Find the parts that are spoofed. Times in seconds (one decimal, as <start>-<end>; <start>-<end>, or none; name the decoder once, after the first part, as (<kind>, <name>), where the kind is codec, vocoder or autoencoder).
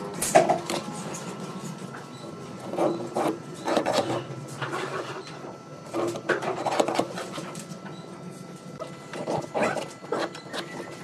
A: 1.0-5.5 (vocoder, Vocos); 6.4-8.2